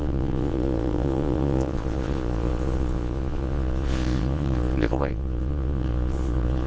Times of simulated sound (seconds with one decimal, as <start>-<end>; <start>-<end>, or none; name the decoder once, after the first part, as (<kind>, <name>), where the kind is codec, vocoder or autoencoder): 0.0-6.7 (vocoder, Vocos)